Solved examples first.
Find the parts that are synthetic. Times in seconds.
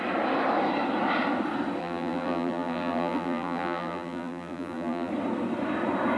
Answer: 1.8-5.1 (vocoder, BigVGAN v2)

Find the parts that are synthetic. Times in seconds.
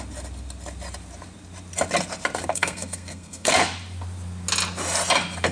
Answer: 2.5-3.5 (codec, SNAC)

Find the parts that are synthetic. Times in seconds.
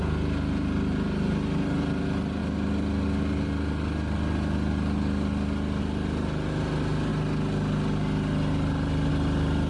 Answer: none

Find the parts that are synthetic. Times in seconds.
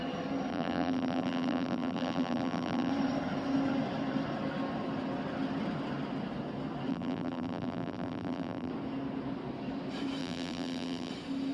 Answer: 0.5-2.9 (vocoder, BigVGAN v2); 6.9-8.7; 10.2-11.1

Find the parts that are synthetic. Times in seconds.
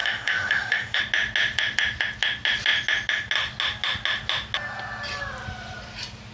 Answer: 0.0-1.0 (autoencoder, DAC-VAE)